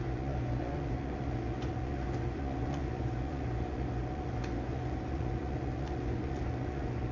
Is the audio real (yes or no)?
no